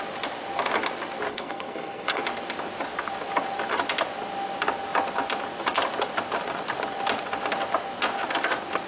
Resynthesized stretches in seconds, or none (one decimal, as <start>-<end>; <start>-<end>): 1.3-2.2